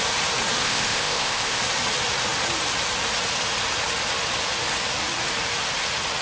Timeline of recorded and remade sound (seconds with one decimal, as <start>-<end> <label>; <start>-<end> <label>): 0.0-0.6 recorded; 0.6-1.6 remade; 1.6-6.2 recorded